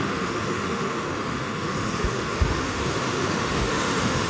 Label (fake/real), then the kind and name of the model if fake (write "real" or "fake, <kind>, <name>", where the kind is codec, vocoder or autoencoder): fake, autoencoder, DAC-VAE